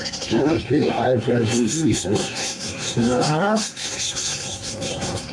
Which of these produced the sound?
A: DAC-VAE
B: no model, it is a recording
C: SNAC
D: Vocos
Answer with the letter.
C